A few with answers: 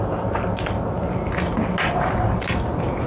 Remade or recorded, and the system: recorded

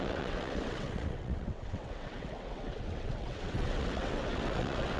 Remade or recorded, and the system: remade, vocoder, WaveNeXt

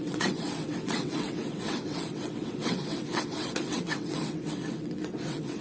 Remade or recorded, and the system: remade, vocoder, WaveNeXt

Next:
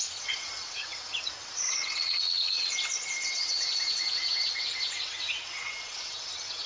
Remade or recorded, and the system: remade, vocoder, WaveNeXt